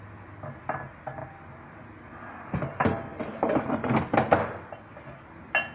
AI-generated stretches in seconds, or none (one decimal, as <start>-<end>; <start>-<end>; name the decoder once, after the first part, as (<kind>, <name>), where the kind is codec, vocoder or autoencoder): none